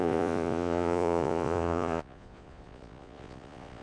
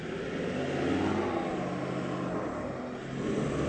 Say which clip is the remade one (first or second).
first